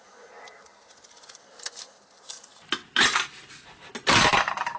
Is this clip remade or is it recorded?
recorded